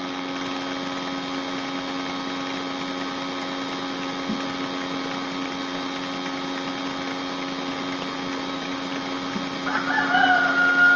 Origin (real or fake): real